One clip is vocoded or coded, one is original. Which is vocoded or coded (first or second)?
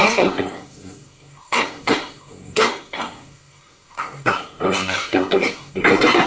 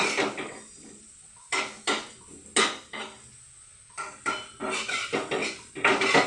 first